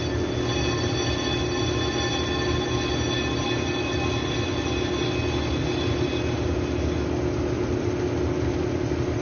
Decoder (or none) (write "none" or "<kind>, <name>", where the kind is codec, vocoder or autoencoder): none